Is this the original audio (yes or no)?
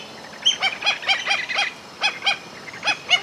yes